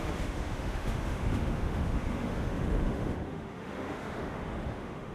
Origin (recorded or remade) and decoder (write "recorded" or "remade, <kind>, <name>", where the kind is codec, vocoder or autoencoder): remade, autoencoder, DAC-VAE